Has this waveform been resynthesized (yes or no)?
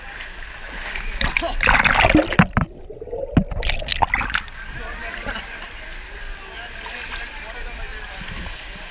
no